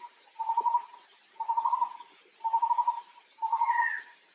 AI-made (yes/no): no